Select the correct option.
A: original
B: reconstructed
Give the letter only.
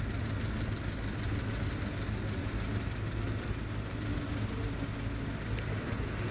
A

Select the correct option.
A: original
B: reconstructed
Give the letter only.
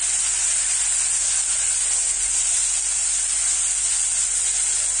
A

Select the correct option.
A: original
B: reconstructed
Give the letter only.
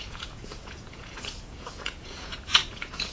B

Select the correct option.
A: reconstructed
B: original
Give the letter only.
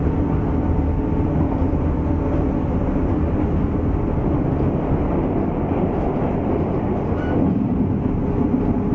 B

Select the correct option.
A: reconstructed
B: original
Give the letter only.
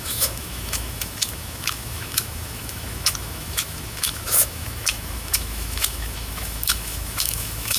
A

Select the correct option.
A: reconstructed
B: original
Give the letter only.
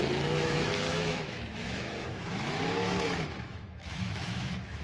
A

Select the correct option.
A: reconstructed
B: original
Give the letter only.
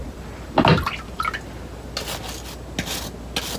B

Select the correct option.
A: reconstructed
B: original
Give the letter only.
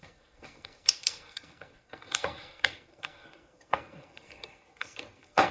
A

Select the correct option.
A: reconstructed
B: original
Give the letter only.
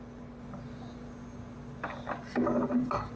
B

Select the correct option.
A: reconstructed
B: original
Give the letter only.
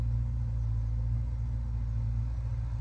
B